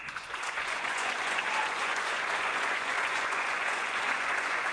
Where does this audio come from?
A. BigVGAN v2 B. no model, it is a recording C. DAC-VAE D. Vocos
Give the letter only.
D